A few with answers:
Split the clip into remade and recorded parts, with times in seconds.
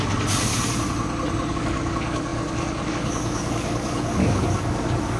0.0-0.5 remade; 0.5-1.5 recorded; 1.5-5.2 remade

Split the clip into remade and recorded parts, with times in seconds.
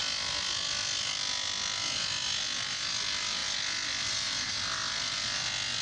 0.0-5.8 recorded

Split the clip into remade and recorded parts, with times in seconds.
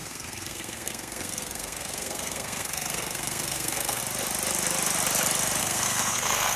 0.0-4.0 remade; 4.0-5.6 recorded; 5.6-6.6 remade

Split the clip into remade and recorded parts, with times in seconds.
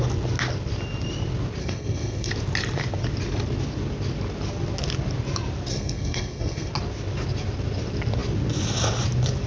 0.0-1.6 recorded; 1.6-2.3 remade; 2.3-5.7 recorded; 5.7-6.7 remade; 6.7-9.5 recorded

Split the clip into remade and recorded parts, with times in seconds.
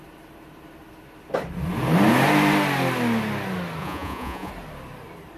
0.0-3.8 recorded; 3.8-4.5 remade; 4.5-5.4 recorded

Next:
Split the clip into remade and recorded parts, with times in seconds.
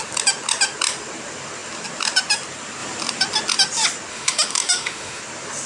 0.0-4.1 recorded; 4.1-5.2 remade; 5.2-5.7 recorded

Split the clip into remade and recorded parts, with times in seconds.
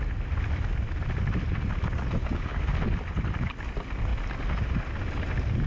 0.0-2.2 recorded; 2.2-2.7 remade; 2.7-5.7 recorded